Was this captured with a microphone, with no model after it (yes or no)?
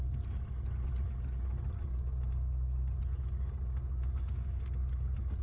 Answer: yes